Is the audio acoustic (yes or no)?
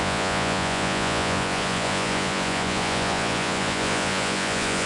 no